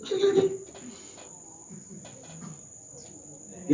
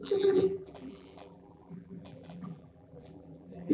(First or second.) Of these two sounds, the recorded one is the first